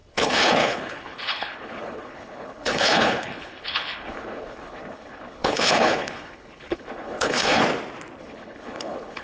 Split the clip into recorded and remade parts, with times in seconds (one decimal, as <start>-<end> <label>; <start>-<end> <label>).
0.0-7.6 remade; 7.6-8.2 recorded; 8.2-9.2 remade